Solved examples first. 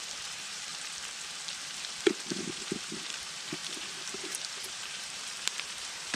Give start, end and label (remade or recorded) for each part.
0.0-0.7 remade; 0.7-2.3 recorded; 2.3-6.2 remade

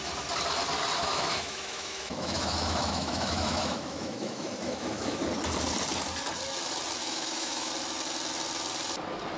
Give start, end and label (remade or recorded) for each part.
0.0-1.0 recorded; 1.0-5.2 remade; 5.2-7.0 recorded; 7.0-7.7 remade; 7.7-9.4 recorded

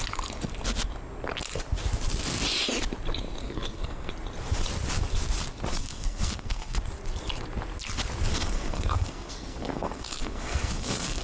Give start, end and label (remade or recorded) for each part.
0.0-3.4 recorded; 3.4-4.1 remade; 4.1-5.7 recorded; 5.7-6.8 remade; 6.8-8.3 recorded; 8.3-11.2 remade

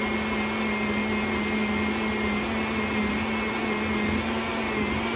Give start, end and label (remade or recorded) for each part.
0.0-5.2 recorded

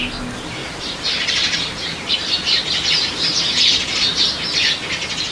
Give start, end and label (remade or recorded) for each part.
0.0-0.6 recorded; 0.6-3.1 remade; 3.1-3.7 recorded; 3.7-4.3 remade; 4.3-5.3 recorded